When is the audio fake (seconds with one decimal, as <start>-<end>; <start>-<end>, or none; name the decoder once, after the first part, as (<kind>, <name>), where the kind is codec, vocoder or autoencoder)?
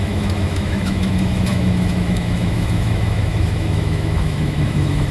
0.0-5.1 (autoencoder, DAC-VAE)